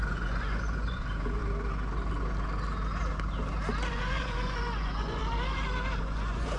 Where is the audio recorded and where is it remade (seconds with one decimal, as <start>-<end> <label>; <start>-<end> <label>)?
0.0-1.4 remade; 1.4-3.9 recorded; 3.9-5.2 remade; 5.2-6.0 recorded; 6.0-6.6 remade